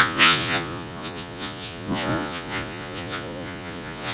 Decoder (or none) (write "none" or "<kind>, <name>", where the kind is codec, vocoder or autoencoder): vocoder, Vocos